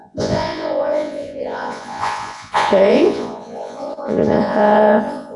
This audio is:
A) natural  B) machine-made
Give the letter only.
B